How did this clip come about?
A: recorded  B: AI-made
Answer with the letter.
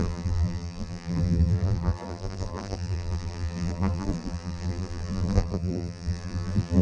B